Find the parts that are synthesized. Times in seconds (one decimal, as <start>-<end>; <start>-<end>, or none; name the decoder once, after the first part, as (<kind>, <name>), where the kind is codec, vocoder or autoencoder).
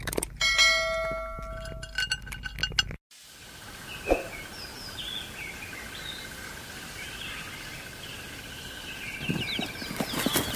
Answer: none